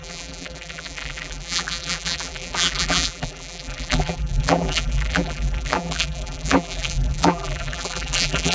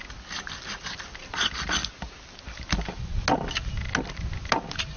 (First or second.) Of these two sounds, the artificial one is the first